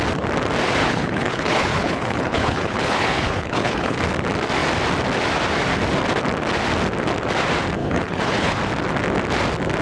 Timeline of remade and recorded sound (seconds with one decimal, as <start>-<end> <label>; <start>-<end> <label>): 0.0-0.8 recorded; 0.8-4.0 remade; 4.0-7.8 recorded; 7.8-8.5 remade; 8.5-9.8 recorded